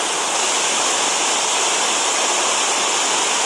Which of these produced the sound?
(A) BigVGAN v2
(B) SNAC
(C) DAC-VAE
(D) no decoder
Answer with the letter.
D